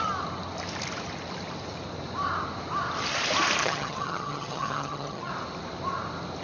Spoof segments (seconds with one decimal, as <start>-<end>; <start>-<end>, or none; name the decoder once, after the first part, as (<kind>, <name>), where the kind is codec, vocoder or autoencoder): 3.6-5.3 (vocoder, HiFi-GAN)